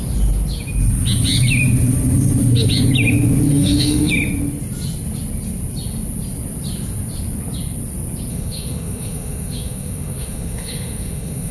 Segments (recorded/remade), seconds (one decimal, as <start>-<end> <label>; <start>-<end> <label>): 0.0-3.5 recorded; 3.5-4.1 remade; 4.1-8.3 recorded; 8.3-11.5 remade